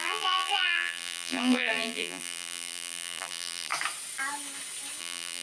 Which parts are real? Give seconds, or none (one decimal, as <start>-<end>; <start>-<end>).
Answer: 3.7-5.0